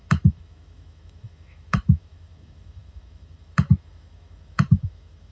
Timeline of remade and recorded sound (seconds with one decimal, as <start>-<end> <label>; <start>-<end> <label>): 0.0-5.3 remade